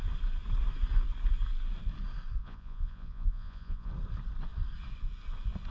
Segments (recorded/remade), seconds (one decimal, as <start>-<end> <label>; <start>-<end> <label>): 0.0-2.4 recorded; 2.4-3.9 remade; 3.9-5.7 recorded